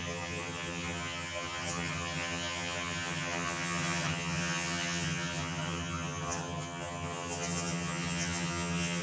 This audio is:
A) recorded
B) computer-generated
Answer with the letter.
B